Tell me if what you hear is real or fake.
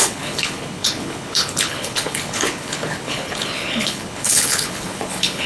fake